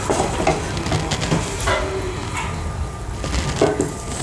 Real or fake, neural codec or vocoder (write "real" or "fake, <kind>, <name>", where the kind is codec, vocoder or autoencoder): real